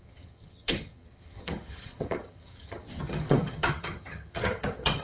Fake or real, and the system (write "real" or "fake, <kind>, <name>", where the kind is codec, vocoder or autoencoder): fake, vocoder, HiFi-GAN